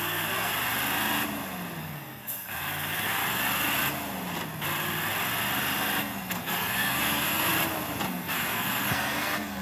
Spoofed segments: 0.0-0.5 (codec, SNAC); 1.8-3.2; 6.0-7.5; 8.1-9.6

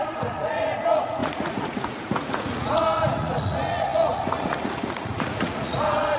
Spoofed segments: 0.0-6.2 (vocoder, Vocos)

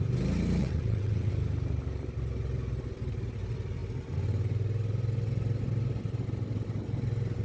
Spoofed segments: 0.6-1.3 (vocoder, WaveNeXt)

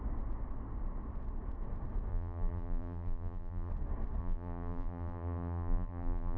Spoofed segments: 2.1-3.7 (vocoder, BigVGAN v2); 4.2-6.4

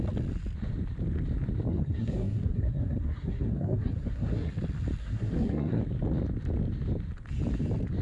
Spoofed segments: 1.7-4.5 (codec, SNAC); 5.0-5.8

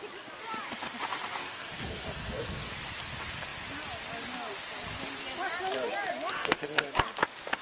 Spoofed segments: 1.4-2.7 (codec, SNAC); 6.3-6.9

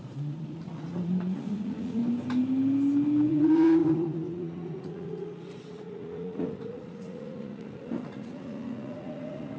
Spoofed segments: 0.0-2.0 (vocoder, Vocos); 3.3-9.6